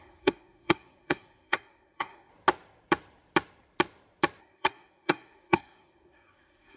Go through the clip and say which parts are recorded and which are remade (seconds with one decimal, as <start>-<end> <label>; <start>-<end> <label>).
0.0-2.3 remade; 2.3-4.4 recorded; 4.4-6.8 remade